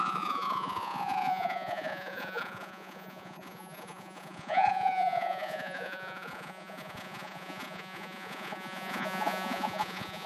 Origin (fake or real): fake